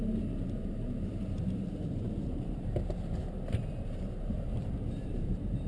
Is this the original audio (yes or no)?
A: no